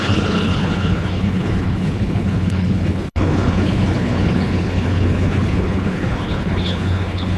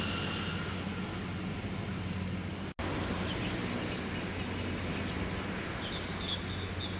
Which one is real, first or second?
second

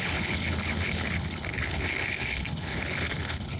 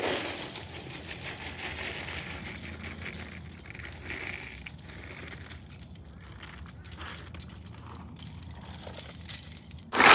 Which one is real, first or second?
second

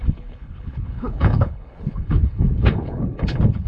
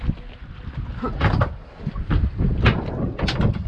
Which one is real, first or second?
second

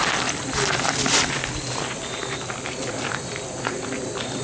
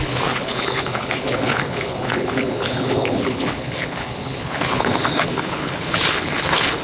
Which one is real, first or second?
first